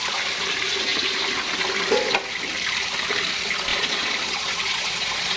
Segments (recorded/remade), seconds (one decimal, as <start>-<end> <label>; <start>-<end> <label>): 0.0-3.7 recorded; 3.7-5.4 remade